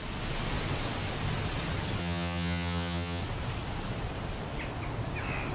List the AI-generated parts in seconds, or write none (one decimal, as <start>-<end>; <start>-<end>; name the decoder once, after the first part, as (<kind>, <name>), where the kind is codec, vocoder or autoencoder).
2.0-3.2 (vocoder, HiFi-GAN)